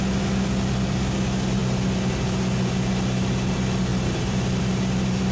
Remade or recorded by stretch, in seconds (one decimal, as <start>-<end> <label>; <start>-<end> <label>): 0.0-3.9 recorded; 3.9-4.6 remade; 4.6-5.3 recorded